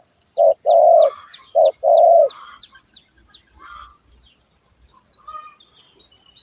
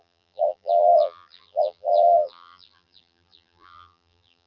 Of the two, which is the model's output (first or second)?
second